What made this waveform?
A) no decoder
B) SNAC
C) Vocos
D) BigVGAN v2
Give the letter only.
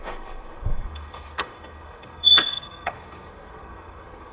B